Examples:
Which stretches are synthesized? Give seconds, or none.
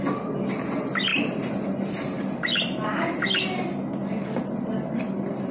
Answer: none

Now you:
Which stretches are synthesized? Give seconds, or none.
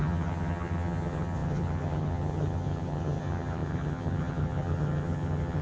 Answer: 0.0-5.6 (vocoder, HiFi-GAN)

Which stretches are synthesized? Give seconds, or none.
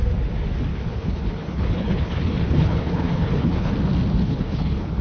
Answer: 0.7-3.7 (codec, HILCodec); 4.2-5.0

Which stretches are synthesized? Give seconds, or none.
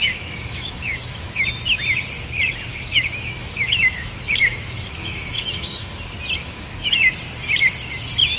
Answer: 0.0-1.6 (autoencoder, DAC-VAE); 2.7-5.9; 6.4-6.9